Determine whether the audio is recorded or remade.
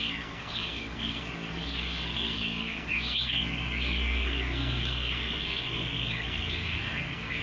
remade